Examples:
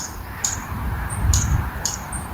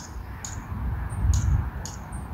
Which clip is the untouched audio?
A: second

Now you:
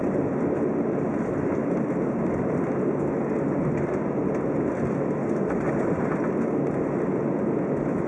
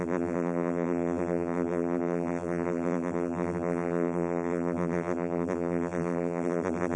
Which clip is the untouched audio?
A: first